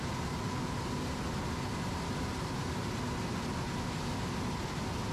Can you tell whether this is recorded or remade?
recorded